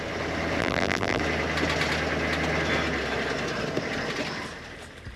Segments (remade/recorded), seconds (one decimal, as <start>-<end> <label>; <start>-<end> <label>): 0.0-0.6 recorded; 0.6-1.2 remade; 1.2-5.2 recorded